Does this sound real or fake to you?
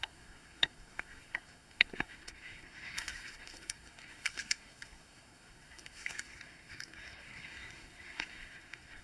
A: fake